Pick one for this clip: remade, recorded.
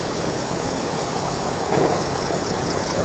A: remade